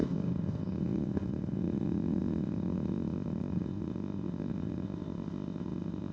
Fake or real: fake